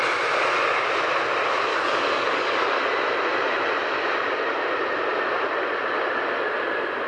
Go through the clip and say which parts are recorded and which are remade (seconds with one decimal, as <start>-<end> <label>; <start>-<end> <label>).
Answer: 0.0-1.7 recorded; 1.7-2.8 remade; 2.8-7.1 recorded